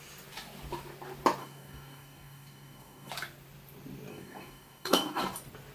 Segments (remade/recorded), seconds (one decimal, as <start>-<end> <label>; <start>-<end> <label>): 0.0-1.4 recorded; 1.4-3.1 remade; 3.1-4.1 recorded; 4.1-5.2 remade; 5.2-5.7 recorded

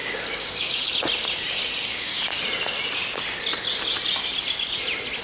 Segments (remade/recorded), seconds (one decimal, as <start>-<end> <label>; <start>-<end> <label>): 0.0-0.9 remade; 0.9-1.9 recorded; 1.9-2.4 remade; 2.4-5.2 recorded

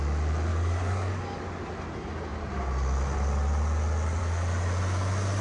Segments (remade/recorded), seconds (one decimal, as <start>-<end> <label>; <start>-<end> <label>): 0.0-0.5 recorded; 0.5-1.5 remade; 1.5-5.4 recorded

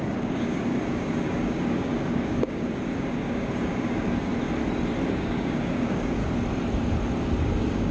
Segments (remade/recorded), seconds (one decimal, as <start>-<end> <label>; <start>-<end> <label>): 0.0-4.3 remade; 4.3-5.1 recorded; 5.1-6.2 remade; 6.2-7.2 recorded; 7.2-7.9 remade

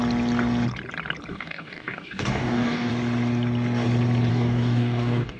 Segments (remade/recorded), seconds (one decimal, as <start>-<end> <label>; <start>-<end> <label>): 0.0-1.3 recorded; 1.3-2.9 remade; 2.9-4.3 recorded; 4.3-5.4 remade

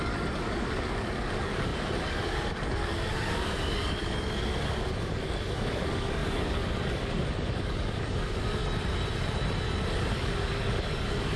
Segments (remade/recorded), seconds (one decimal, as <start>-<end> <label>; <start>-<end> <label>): 0.0-8.6 remade; 8.6-9.9 recorded; 9.9-11.4 remade